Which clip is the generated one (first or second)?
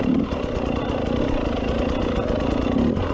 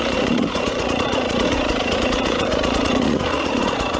second